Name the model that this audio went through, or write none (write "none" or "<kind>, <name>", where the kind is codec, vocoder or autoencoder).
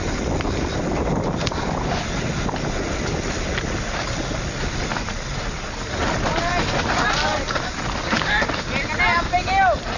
none